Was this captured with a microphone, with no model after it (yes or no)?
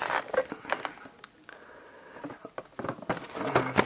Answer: yes